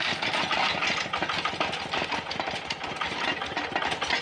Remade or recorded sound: recorded